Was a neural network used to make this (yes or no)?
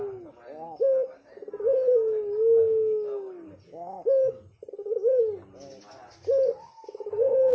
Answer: no